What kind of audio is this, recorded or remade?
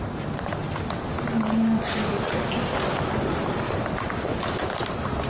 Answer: recorded